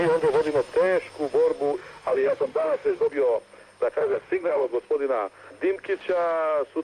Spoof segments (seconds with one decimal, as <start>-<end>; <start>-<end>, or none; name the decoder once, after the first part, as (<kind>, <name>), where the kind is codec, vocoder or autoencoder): 1.8-3.1 (autoencoder, DAC-VAE); 4.0-4.7